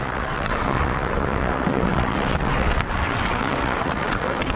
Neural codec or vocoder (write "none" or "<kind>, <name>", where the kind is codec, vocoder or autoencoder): vocoder, WaveNeXt